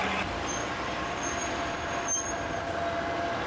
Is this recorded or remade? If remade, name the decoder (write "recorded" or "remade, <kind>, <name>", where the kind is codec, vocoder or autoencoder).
recorded